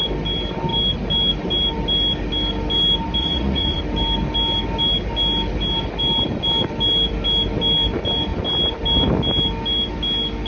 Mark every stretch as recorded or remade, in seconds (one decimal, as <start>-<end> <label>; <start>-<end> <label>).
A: 0.0-3.2 recorded; 3.2-3.8 remade; 3.8-10.5 recorded